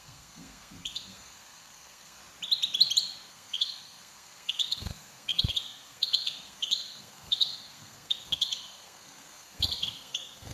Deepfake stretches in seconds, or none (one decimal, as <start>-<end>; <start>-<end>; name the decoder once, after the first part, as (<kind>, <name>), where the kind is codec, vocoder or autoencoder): 0.0-2.2 (codec, SNAC); 3.3-10.5